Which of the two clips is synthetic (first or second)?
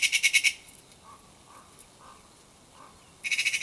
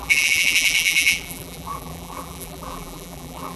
second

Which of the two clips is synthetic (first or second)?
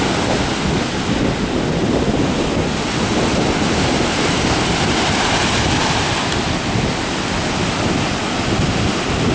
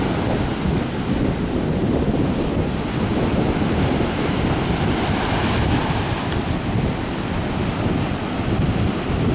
second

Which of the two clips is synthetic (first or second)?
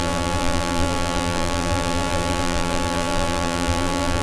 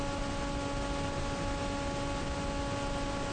first